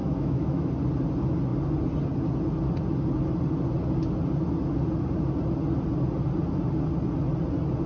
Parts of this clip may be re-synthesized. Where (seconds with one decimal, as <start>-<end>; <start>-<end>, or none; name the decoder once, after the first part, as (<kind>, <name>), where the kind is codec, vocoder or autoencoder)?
0.0-0.7 (autoencoder, DAC-VAE)